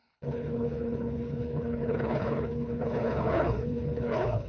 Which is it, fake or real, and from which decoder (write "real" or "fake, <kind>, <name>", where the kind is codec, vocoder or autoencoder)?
fake, codec, HILCodec